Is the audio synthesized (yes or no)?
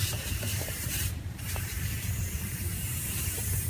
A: yes